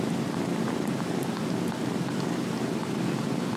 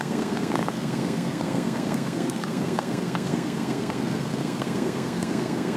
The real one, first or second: first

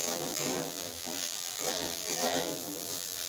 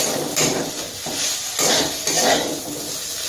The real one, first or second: second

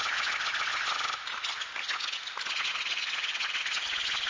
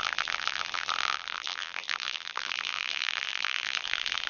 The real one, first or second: first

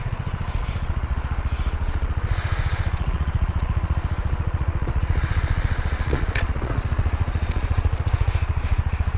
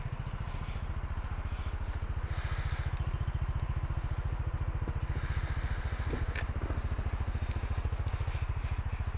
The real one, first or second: second